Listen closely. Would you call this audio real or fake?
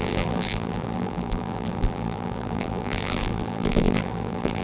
fake